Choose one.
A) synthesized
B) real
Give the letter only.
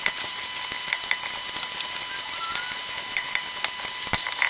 B